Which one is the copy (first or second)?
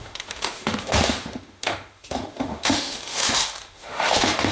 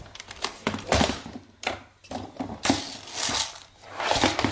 first